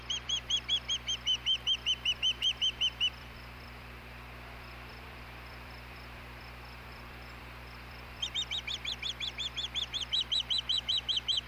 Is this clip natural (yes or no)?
no